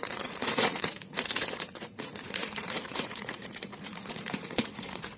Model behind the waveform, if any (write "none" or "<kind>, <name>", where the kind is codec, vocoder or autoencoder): vocoder, Vocos